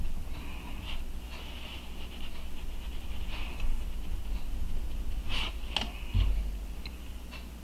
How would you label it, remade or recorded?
recorded